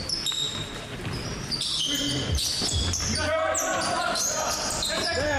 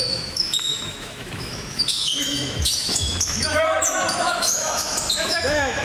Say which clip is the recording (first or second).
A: first